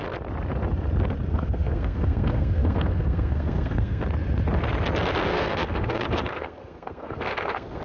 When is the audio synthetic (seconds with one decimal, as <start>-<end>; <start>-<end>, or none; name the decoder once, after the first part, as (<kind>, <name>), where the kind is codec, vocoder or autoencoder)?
1.3-4.0 (codec, SNAC); 5.3-7.8